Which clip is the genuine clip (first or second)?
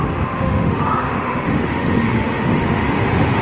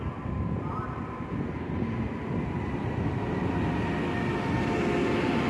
second